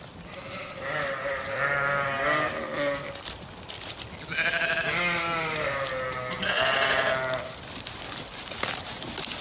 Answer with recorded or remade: recorded